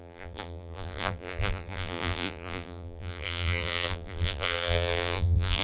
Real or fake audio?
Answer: fake